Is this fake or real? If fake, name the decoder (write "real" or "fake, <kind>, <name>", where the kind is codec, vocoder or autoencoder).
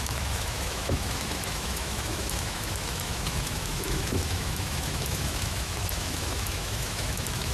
fake, autoencoder, DAC-VAE